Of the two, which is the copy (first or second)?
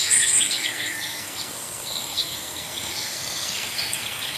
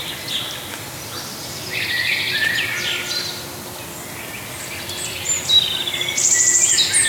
first